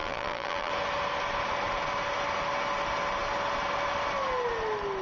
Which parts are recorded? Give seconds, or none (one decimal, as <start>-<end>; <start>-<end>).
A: 0.7-5.0

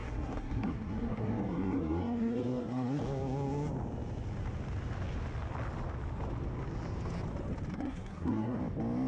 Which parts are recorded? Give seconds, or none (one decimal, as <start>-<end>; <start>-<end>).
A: 3.0-7.7; 8.6-9.1

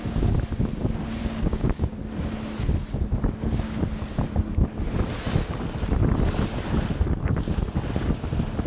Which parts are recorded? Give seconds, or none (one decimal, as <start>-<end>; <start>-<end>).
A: 0.0-1.2; 1.9-8.7

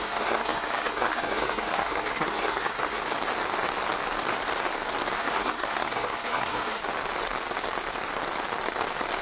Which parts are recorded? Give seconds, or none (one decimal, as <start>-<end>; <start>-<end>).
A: 3.0-5.2; 6.8-9.2

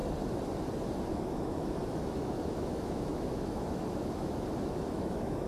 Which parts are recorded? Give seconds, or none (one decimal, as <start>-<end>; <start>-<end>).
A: 0.0-1.1

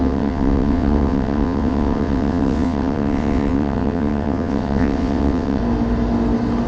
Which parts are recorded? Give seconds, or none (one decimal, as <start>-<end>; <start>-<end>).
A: 5.6-6.7

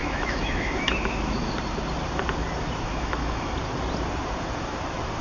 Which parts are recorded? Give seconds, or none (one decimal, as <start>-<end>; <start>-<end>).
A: 1.5-2.9; 3.5-5.2